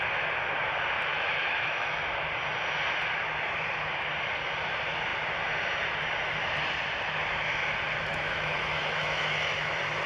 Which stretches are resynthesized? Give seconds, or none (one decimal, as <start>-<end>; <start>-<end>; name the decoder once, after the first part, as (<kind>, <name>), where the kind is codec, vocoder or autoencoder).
1.1-2.0 (autoencoder, DAC-VAE); 8.1-9.7